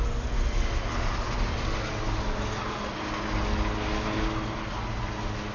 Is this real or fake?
real